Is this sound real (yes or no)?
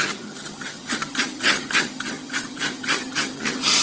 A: no